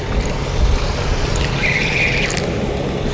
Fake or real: real